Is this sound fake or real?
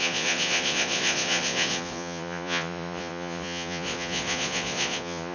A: fake